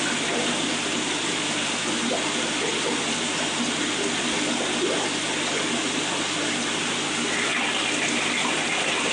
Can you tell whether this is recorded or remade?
recorded